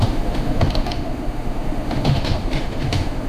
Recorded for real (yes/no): no